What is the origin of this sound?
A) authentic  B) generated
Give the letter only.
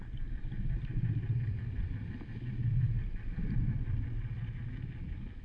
A